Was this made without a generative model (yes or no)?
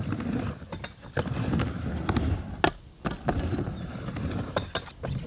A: yes